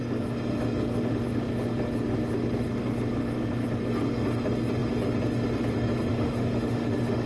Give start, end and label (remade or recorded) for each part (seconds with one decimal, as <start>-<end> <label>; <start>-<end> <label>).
0.0-6.1 recorded; 6.1-7.3 remade